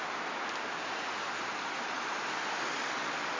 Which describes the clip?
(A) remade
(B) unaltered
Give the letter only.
B